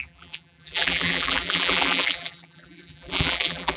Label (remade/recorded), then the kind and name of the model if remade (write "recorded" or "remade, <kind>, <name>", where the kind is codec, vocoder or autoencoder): remade, vocoder, BigVGAN v2